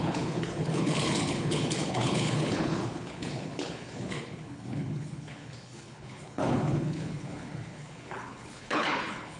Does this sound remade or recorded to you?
remade